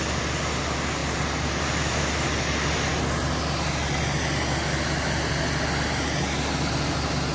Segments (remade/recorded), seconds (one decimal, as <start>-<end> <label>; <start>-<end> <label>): 0.0-7.3 recorded